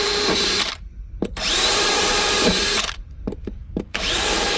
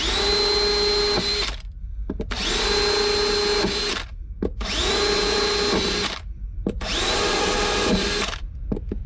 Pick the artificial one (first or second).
first